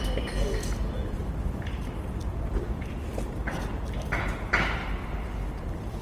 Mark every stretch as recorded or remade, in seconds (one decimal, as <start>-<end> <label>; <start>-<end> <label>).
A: 0.0-0.8 recorded; 0.8-1.8 remade; 1.8-2.3 recorded; 2.3-3.1 remade; 3.1-5.0 recorded; 5.0-6.0 remade